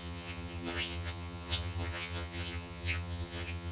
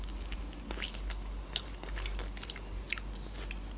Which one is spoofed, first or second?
first